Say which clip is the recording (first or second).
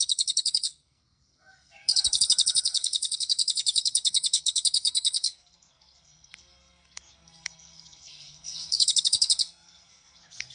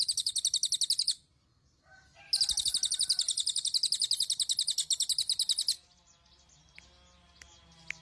second